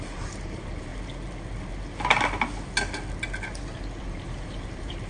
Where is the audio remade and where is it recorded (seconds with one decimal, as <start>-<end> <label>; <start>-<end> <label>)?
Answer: 0.0-0.9 remade; 0.9-4.0 recorded; 4.0-5.1 remade

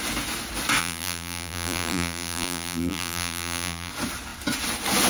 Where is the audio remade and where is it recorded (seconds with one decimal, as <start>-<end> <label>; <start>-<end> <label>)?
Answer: 0.0-0.8 recorded; 0.8-3.9 remade; 3.9-5.1 recorded

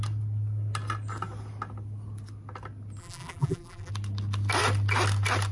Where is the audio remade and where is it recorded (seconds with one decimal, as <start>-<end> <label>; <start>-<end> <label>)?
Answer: 0.0-3.0 recorded; 3.0-3.9 remade; 3.9-5.5 recorded

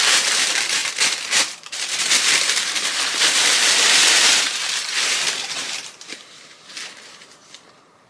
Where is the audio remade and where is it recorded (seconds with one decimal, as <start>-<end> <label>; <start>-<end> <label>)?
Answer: 0.0-8.1 remade

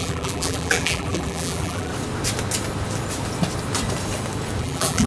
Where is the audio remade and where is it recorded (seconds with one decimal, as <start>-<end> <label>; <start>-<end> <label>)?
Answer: 0.0-1.9 remade; 1.9-4.6 recorded; 4.6-5.1 remade